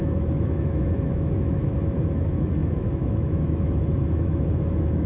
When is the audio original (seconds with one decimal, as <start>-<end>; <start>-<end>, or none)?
none